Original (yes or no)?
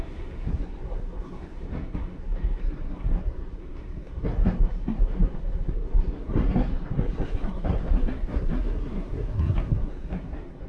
no